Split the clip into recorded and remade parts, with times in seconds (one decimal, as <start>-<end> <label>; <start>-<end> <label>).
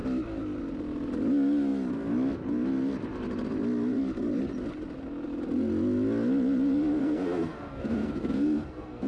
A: 0.0-7.0 recorded; 7.0-9.1 remade